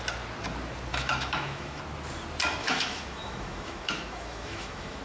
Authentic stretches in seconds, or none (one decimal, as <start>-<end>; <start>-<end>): 0.0-0.9; 1.8-2.6

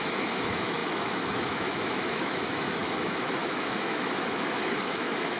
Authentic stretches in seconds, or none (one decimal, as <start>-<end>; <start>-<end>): none

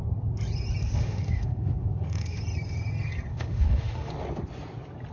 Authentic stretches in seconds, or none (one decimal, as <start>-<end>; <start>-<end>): 0.0-0.8; 2.4-3.3; 4.1-5.1

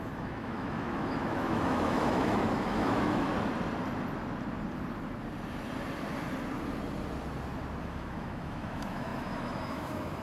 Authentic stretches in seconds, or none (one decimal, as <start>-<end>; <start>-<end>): 3.3-7.8

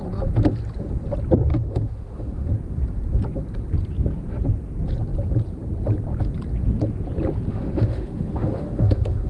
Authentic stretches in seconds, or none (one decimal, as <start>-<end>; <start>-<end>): 0.0-1.5; 2.5-7.5

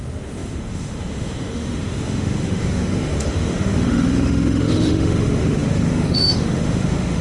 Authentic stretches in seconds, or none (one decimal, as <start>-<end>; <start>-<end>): none

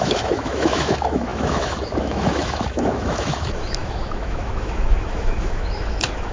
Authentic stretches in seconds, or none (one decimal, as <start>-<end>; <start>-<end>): none